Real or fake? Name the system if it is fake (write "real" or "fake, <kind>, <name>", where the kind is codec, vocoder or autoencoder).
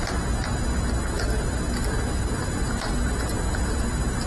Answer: real